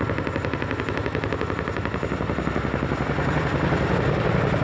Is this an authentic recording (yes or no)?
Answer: yes